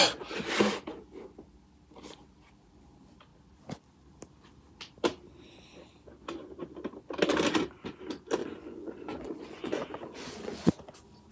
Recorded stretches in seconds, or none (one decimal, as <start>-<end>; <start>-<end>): 0.0-8.4; 10.7-11.3